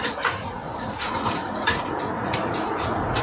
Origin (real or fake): fake